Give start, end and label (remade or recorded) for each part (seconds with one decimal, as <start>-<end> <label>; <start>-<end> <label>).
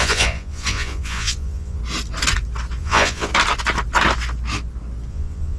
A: 0.0-1.8 remade; 1.8-2.8 recorded; 2.8-3.3 remade; 3.3-5.1 recorded; 5.1-5.6 remade